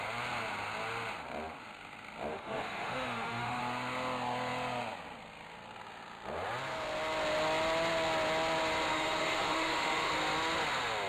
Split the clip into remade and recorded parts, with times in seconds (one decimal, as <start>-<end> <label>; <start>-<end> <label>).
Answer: 0.0-2.3 recorded; 2.3-3.6 remade; 3.6-8.9 recorded; 8.9-10.1 remade; 10.1-11.1 recorded